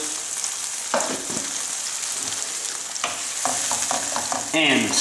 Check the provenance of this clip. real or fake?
real